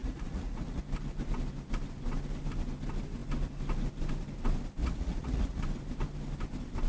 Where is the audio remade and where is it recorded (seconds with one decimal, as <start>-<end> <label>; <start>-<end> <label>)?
0.0-0.8 remade; 0.8-4.8 recorded; 4.8-5.6 remade; 5.6-6.9 recorded